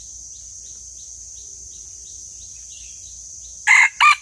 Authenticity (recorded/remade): recorded